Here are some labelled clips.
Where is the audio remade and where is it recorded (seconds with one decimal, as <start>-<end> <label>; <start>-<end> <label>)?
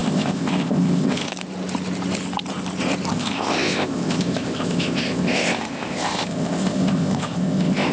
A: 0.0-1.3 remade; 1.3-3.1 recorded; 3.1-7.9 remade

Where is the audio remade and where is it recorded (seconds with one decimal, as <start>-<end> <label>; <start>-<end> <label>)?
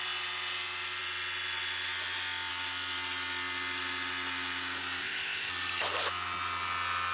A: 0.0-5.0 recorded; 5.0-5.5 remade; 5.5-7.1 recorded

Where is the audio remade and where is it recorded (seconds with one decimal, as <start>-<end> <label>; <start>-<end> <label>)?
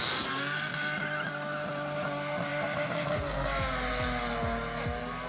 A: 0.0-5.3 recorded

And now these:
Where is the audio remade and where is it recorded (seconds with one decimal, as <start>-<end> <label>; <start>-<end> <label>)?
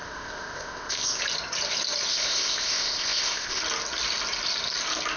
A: 0.0-1.2 remade; 1.2-2.1 recorded; 2.1-3.6 remade; 3.6-5.2 recorded